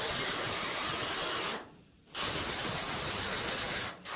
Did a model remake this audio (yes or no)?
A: no